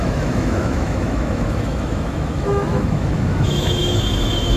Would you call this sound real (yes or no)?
no